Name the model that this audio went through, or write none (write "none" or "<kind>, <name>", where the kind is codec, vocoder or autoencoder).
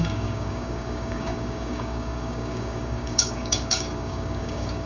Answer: codec, DAC